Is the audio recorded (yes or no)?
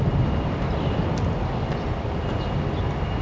yes